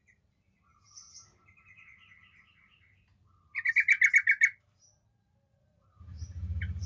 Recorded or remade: recorded